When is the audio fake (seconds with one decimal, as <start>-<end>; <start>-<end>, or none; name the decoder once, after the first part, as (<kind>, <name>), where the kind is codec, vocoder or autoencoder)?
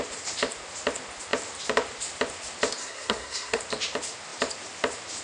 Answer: 2.8-3.6 (codec, SNAC)